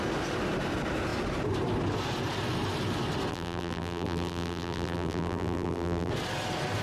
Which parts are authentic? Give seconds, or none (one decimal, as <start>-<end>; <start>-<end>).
0.0-3.3; 6.1-6.8